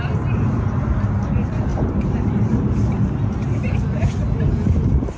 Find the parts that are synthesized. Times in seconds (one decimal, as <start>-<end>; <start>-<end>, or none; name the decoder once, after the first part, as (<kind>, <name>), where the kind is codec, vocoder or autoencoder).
1.7-2.7 (vocoder, BigVGAN v2)